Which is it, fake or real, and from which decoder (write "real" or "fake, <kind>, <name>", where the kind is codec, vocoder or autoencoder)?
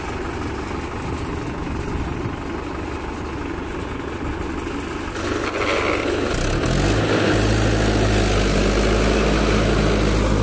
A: real